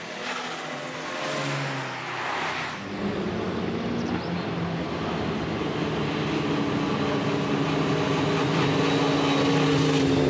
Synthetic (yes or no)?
no